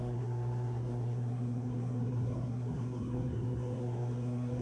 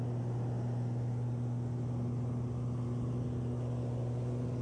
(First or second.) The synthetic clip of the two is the first